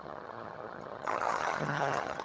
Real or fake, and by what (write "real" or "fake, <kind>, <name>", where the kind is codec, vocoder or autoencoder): fake, vocoder, HiFi-GAN